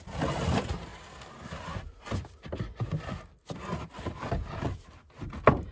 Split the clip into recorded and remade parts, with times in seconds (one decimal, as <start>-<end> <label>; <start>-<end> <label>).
0.0-5.7 recorded